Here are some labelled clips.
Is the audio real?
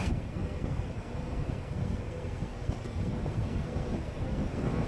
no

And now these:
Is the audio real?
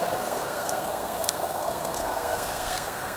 no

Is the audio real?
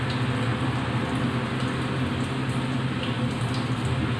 yes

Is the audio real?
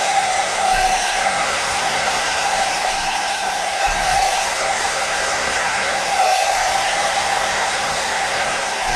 no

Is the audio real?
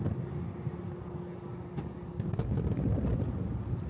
yes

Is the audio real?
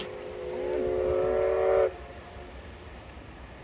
yes